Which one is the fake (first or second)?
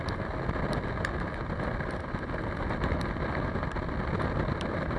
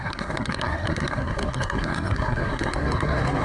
second